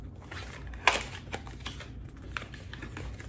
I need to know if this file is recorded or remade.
recorded